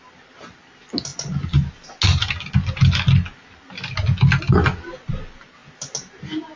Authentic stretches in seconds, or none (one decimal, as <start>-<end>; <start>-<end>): 0.0-6.6